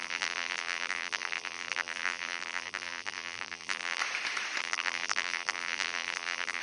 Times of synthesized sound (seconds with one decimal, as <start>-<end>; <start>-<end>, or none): 0.0-4.0; 4.6-6.6